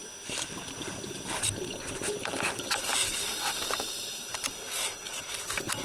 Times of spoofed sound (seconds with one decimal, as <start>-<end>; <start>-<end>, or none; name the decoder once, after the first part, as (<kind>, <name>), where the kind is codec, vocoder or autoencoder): none